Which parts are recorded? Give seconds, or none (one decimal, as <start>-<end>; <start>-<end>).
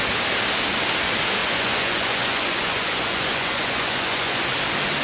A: 0.0-1.4; 4.4-5.0